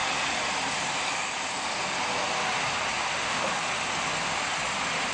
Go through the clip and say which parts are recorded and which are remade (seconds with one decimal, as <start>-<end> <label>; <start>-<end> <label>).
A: 0.0-3.1 recorded; 3.1-3.5 remade; 3.5-5.1 recorded